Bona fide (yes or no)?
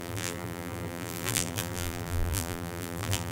no